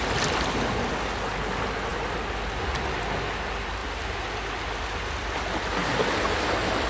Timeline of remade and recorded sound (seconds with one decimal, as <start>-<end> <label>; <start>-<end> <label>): 0.0-6.9 recorded